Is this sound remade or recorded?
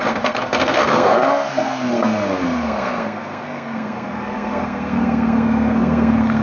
remade